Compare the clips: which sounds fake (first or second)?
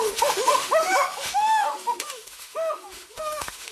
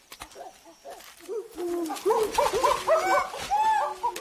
first